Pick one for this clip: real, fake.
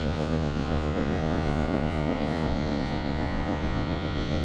fake